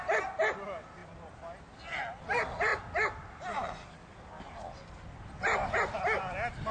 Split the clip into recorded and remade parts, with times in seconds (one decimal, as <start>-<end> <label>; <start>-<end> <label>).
0.0-6.7 recorded